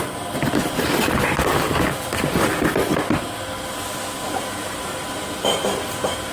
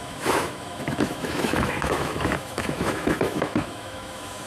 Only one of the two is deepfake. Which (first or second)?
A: second